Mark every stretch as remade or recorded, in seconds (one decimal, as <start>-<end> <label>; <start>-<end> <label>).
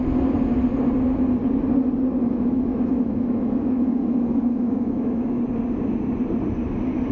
0.0-2.2 recorded; 2.2-5.4 remade; 5.4-7.1 recorded